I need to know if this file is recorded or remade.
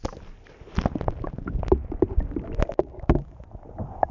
recorded